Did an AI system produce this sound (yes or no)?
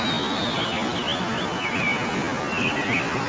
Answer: no